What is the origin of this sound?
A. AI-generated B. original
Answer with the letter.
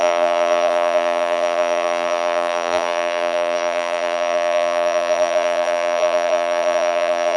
A